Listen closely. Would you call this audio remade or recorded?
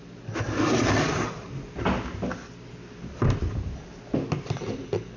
recorded